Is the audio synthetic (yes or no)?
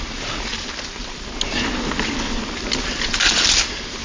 no